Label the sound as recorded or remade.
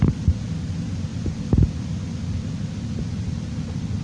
recorded